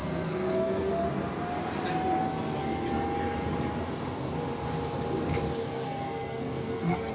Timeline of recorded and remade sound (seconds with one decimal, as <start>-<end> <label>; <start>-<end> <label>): 0.0-0.9 remade; 0.9-5.6 recorded; 5.6-7.1 remade